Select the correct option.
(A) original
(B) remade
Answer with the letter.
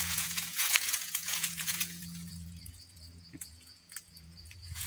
B